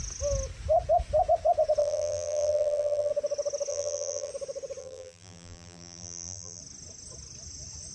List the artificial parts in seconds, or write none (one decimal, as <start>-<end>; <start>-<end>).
1.8-3.1; 3.7-4.3; 4.8-6.6